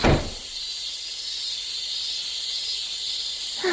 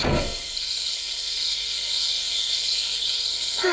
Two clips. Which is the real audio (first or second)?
first